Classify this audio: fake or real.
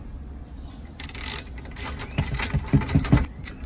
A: real